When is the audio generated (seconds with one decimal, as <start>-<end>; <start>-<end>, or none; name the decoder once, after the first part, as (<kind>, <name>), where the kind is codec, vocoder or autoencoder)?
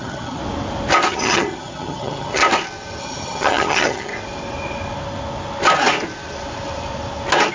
0.0-0.4 (vocoder, HiFi-GAN); 1.1-2.4; 3.0-4.1